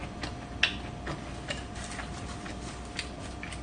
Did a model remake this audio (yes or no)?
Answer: no